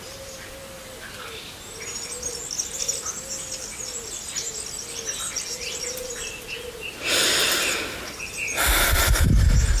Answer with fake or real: real